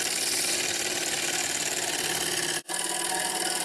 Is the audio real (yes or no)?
yes